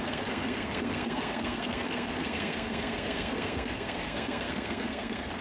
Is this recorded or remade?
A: remade